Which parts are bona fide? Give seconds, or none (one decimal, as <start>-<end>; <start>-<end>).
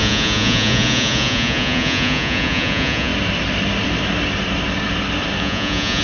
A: 3.1-5.4